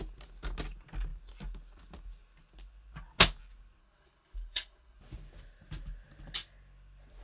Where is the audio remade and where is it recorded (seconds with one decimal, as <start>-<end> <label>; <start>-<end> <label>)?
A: 0.0-3.8 recorded; 3.8-5.0 remade; 5.0-7.2 recorded